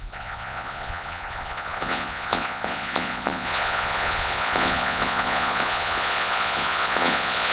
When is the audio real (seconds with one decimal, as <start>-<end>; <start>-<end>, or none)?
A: none